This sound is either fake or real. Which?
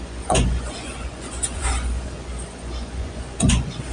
fake